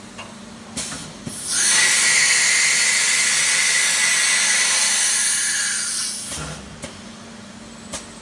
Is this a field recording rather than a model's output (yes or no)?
yes